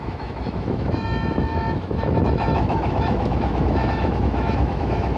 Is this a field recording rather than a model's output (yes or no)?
no